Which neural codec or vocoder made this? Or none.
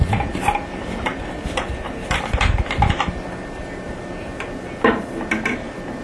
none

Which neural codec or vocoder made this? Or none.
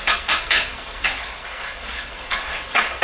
codec, SNAC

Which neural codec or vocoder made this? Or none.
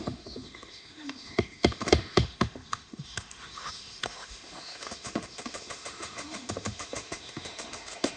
autoencoder, DAC-VAE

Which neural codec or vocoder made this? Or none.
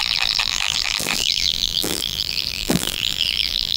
vocoder, BigVGAN v2